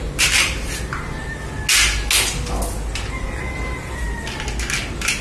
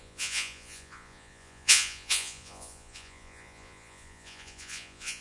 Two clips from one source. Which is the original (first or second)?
first